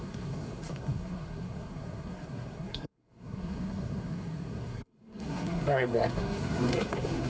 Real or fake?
fake